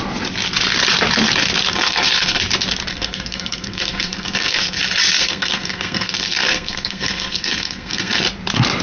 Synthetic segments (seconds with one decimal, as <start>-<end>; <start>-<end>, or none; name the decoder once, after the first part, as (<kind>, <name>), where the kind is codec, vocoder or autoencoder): 1.7-2.4 (codec, SNAC); 2.9-4.8; 5.2-8.2